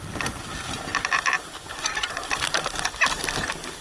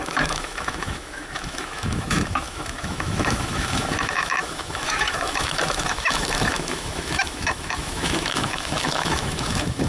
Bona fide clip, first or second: first